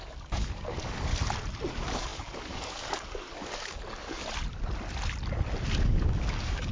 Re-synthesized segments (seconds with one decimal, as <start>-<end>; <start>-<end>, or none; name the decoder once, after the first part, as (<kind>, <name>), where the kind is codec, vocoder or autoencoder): 0.0-1.1 (codec, DAC); 1.7-4.2; 5.8-6.7